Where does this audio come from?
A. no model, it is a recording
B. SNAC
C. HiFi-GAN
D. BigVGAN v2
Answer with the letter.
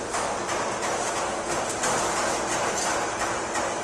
A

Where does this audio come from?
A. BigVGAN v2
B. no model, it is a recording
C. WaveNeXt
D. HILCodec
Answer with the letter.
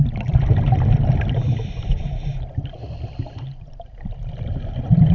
A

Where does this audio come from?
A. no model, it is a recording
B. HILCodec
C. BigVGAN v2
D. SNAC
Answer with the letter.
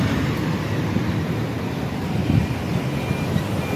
A